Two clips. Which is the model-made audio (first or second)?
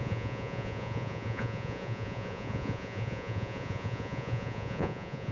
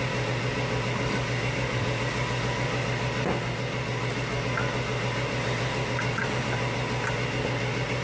first